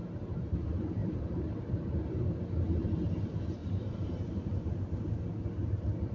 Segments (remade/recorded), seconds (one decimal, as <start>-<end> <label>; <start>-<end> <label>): 0.0-1.0 recorded; 1.0-1.7 remade; 1.7-3.6 recorded; 3.6-5.2 remade; 5.2-6.1 recorded